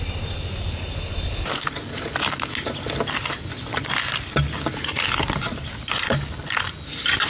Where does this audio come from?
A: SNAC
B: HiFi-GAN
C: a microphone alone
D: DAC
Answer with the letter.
C